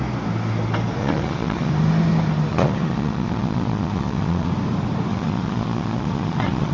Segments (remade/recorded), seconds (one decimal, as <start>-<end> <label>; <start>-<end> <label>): 0.0-1.0 recorded; 1.0-1.7 remade; 1.7-2.5 recorded; 2.5-4.5 remade; 4.5-5.1 recorded; 5.1-6.7 remade